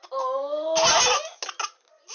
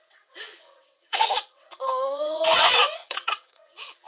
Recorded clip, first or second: first